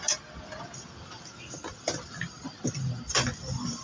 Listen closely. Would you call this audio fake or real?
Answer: real